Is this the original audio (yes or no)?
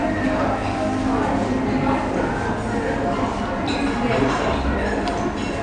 yes